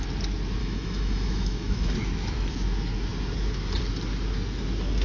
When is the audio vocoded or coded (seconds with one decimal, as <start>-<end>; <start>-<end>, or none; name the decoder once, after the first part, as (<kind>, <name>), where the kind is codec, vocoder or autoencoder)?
0.6-2.5 (autoencoder, DAC-VAE)

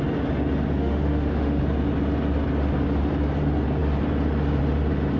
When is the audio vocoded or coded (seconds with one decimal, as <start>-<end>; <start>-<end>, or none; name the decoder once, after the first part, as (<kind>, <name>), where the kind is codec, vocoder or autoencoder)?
0.8-1.6 (autoencoder, DAC-VAE)

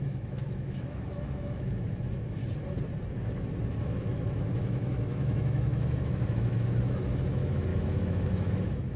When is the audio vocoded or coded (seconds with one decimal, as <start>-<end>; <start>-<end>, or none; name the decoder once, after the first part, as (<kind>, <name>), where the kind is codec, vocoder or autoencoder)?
0.0-2.4 (autoencoder, DAC-VAE); 3.7-9.0

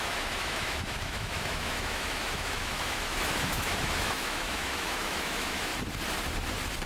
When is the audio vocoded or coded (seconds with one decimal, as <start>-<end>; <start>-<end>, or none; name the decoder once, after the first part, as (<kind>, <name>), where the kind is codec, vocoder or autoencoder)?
0.0-5.7 (autoencoder, DAC-VAE)

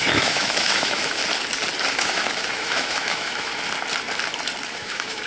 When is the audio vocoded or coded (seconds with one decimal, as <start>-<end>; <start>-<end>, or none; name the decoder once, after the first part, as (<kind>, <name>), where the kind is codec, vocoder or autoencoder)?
0.0-1.2 (autoencoder, DAC-VAE); 1.9-3.5; 4.7-5.3

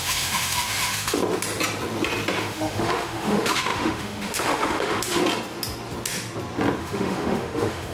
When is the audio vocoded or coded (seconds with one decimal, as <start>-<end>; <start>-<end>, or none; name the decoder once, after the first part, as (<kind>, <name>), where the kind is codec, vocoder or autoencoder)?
0.0-1.2 (autoencoder, DAC-VAE); 2.4-5.2; 6.8-7.9